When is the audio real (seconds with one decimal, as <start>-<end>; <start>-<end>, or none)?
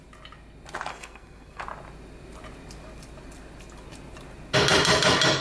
0.0-0.9; 1.6-5.4